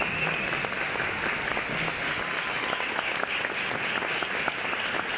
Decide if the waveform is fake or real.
real